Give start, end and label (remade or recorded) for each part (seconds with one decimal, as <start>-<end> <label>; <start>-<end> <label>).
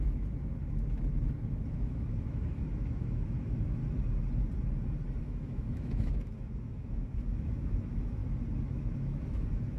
0.0-3.8 remade; 3.8-5.2 recorded; 5.2-8.2 remade; 8.2-8.7 recorded; 8.7-9.8 remade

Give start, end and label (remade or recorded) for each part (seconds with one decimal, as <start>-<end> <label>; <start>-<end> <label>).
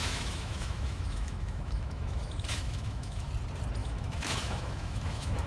0.0-3.3 remade; 3.3-3.8 recorded; 3.8-5.5 remade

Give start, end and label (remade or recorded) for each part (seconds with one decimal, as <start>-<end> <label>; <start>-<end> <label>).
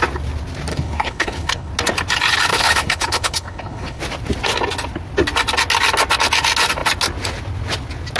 0.0-0.7 recorded; 0.7-1.7 remade; 1.7-2.5 recorded; 2.5-4.0 remade; 4.0-8.2 recorded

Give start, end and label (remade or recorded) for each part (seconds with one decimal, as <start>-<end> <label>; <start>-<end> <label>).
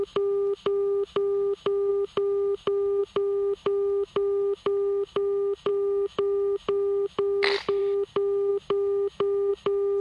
0.0-10.0 recorded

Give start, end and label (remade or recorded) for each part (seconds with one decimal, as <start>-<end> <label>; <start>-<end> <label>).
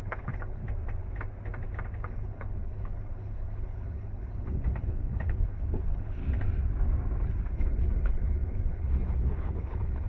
0.0-0.6 remade; 0.6-2.0 recorded; 2.0-6.2 remade; 6.2-7.5 recorded; 7.5-10.1 remade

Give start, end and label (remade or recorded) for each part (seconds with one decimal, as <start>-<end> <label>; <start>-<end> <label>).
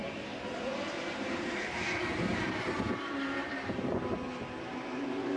0.0-0.7 recorded; 0.7-3.9 remade; 3.9-5.4 recorded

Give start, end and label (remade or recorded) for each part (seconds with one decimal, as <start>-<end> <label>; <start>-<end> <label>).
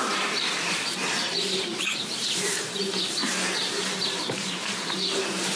0.0-3.2 remade; 3.2-4.0 recorded; 4.0-5.6 remade